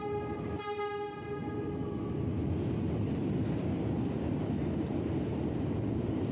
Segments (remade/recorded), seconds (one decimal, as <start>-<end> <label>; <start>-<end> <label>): 0.0-6.3 recorded